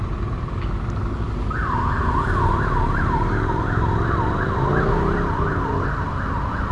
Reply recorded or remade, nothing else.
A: recorded